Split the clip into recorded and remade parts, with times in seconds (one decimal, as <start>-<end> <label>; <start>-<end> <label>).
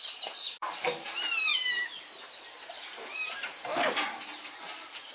0.0-1.5 remade; 1.5-2.4 recorded; 2.4-3.7 remade; 3.7-4.5 recorded; 4.5-5.1 remade